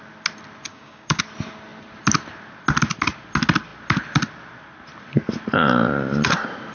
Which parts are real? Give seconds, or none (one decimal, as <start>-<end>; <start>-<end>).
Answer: 0.0-0.7; 1.2-6.7